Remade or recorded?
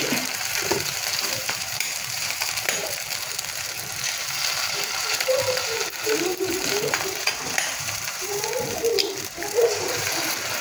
remade